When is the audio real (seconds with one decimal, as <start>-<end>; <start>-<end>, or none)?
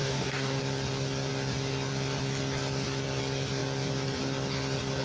0.6-5.0